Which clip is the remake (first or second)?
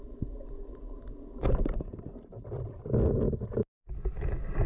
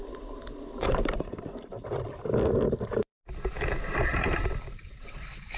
second